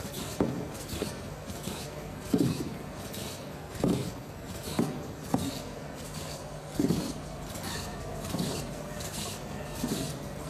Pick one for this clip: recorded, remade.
remade